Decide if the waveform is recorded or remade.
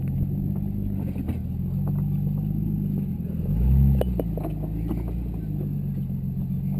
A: recorded